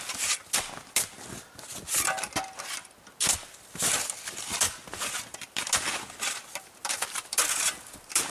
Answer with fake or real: real